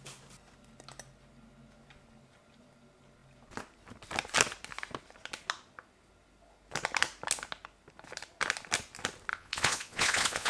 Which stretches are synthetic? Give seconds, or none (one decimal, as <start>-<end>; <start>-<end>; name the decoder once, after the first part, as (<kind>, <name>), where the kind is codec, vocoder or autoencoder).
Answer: 9.3-10.5 (vocoder, Vocos)